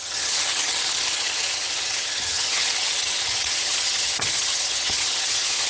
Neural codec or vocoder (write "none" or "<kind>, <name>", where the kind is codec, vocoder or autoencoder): vocoder, HiFi-GAN